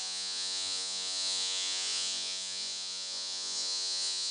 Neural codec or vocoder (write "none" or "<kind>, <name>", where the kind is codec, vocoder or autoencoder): vocoder, Vocos